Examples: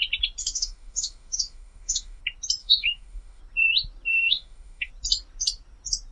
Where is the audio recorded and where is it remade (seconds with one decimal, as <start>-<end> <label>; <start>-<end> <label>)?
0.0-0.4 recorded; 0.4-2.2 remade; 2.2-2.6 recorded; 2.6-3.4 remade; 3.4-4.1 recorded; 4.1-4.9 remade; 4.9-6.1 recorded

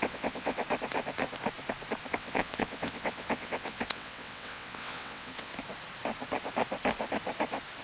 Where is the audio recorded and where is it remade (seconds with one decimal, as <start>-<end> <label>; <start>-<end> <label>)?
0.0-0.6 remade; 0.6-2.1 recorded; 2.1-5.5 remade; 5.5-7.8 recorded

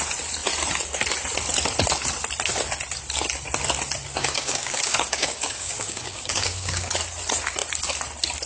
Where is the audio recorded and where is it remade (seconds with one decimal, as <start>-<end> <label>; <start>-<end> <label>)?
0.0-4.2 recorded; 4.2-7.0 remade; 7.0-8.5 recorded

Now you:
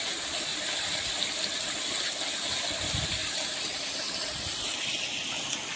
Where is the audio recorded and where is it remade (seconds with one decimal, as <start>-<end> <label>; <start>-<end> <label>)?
0.0-0.5 recorded; 0.5-1.2 remade; 1.2-5.8 recorded